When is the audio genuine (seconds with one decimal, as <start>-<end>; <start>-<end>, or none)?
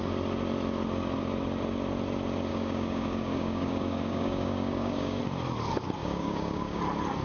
0.0-2.5; 5.2-6.0; 6.8-7.2